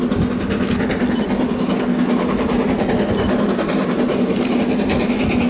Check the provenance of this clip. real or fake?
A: real